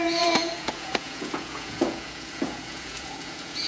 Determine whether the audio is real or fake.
fake